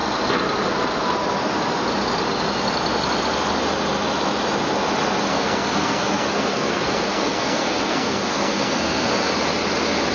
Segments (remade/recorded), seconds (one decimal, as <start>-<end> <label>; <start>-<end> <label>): 0.0-5.3 recorded; 5.3-9.3 remade; 9.3-10.1 recorded